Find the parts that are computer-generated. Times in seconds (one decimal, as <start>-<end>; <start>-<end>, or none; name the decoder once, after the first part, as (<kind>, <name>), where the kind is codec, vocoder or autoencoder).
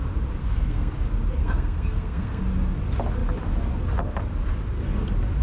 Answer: 0.4-0.9 (codec, SNAC); 1.4-2.4